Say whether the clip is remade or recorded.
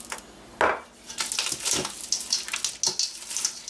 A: recorded